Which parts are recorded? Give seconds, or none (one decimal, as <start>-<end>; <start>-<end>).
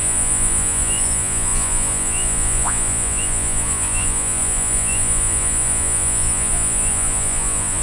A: none